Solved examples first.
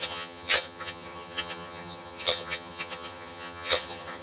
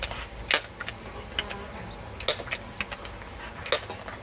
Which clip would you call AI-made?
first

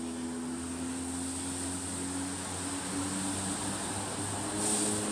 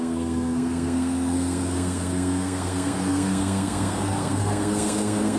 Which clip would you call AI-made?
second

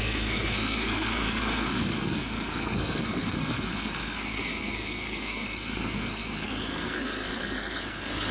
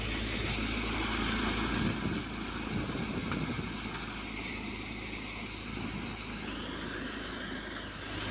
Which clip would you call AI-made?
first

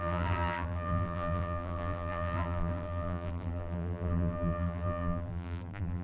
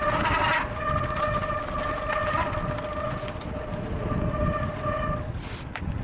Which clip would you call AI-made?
first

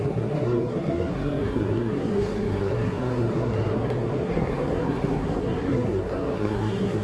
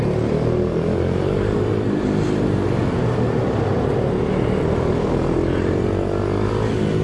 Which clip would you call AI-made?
first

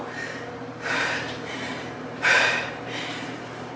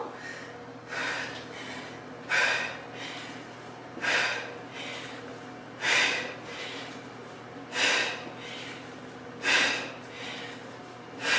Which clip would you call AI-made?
first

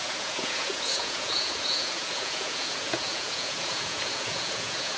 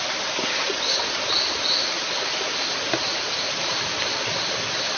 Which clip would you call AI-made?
first